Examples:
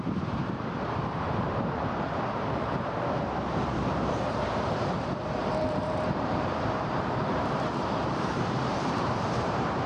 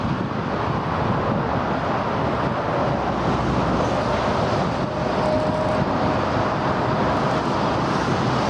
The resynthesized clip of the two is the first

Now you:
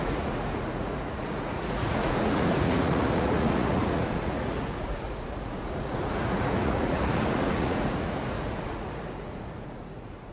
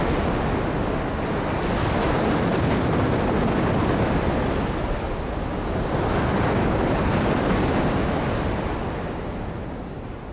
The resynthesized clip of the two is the first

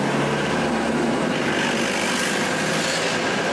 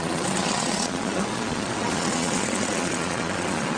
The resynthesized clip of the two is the second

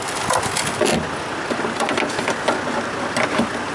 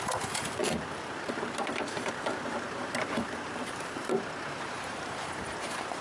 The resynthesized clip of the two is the second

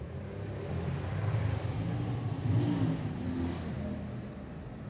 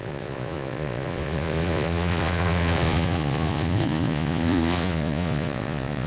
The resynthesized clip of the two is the second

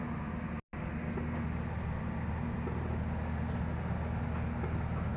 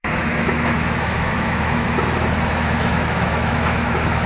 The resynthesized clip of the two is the second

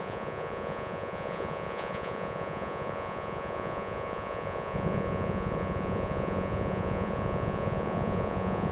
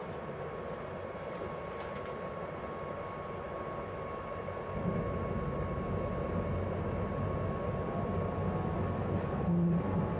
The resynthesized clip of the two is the first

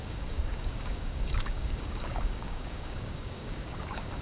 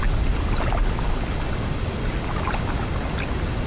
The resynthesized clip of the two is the first